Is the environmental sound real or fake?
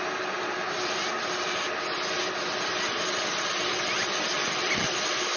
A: real